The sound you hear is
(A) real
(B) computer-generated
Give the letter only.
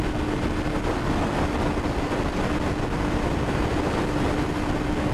A